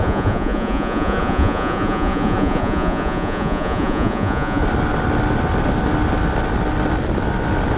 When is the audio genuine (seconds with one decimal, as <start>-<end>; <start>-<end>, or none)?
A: 4.6-7.8